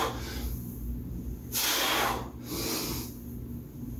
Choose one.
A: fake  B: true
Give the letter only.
B